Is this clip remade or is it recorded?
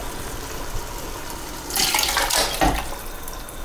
recorded